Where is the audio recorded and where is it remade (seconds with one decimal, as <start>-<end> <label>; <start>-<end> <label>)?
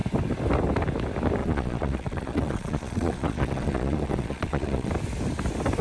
0.0-1.4 recorded; 1.4-4.9 remade; 4.9-5.8 recorded